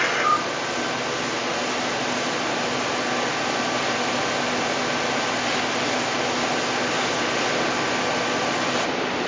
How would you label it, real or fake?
real